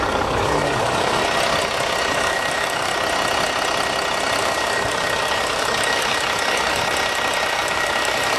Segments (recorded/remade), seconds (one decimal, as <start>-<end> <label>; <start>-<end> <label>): 0.0-1.2 remade; 1.2-2.1 recorded; 2.1-2.9 remade; 2.9-4.4 recorded; 4.4-6.8 remade; 6.8-7.5 recorded; 7.5-8.4 remade